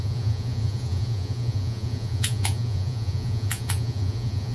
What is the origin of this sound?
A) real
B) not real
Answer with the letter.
B